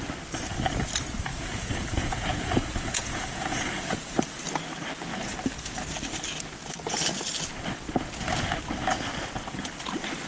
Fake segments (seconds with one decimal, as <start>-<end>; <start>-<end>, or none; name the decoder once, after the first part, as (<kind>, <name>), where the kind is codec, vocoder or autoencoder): 1.3-4.2 (vocoder, Vocos)